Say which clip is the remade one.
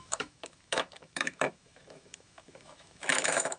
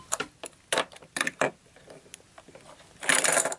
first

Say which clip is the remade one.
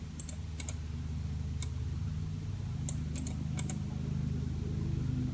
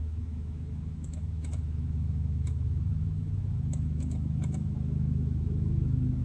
second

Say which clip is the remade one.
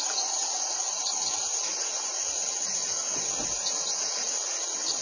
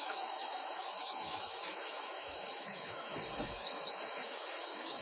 second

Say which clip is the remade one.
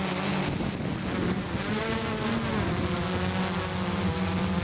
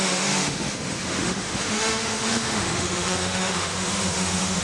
second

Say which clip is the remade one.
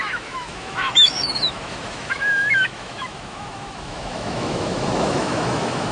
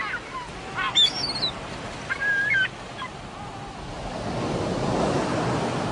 first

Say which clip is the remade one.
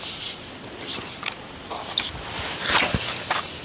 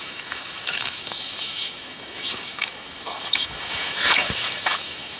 second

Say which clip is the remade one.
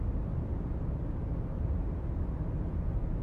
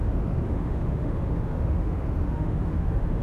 second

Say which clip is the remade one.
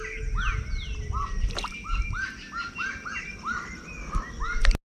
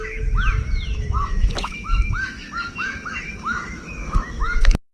second